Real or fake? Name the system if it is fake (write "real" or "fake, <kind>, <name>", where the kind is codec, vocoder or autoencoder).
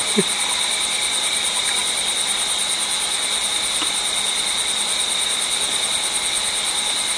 real